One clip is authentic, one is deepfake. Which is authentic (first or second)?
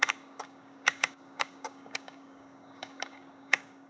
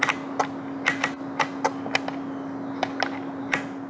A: second